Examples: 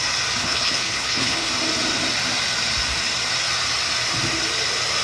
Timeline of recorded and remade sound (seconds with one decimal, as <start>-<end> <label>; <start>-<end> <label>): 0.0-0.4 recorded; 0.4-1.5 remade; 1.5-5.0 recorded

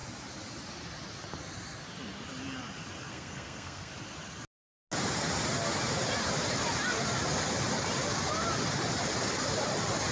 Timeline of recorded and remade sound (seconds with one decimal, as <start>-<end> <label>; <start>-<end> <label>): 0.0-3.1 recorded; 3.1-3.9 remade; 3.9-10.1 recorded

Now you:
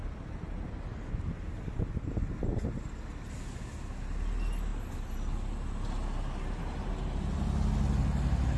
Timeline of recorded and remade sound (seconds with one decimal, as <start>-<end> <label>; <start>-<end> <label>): 0.0-8.6 recorded

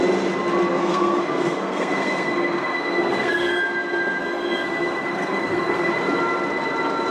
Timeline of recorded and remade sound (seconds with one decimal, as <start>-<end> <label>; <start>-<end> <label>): 0.0-0.7 recorded; 0.7-3.5 remade; 3.5-4.2 recorded; 4.2-5.9 remade; 5.9-7.1 recorded